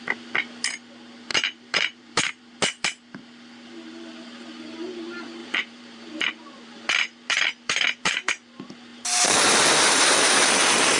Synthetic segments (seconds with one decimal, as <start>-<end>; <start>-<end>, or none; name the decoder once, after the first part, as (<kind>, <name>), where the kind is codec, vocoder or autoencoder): 1.3-2.4 (vocoder, BigVGAN v2); 5.4-8.3; 8.9-10.4